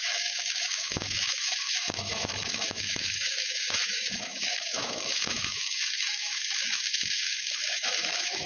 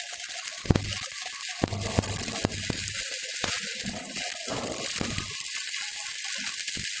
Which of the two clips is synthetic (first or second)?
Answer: first